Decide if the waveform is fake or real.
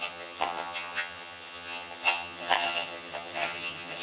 fake